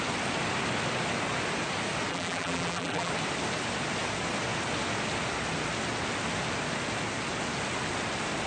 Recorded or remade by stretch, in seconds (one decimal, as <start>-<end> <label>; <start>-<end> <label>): 0.0-2.1 recorded; 2.1-3.1 remade; 3.1-8.5 recorded